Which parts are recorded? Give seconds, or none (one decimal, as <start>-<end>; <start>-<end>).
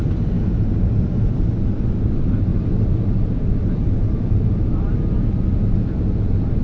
0.0-6.6